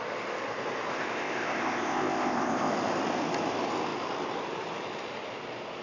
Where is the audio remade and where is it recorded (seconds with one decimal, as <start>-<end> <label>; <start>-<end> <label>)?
0.0-0.9 recorded; 0.9-2.7 remade; 2.7-5.8 recorded